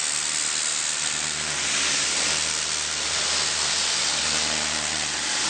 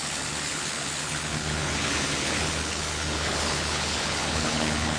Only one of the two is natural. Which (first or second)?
first